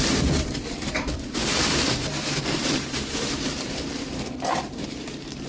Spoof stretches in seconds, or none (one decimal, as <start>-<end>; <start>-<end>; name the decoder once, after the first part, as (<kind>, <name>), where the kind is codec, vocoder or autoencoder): 0.0-1.4 (vocoder, BigVGAN v2); 2.4-5.5